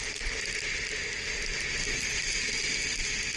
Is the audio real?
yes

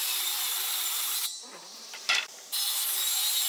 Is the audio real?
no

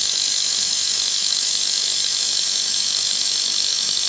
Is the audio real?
no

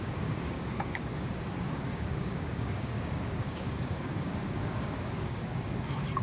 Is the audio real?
no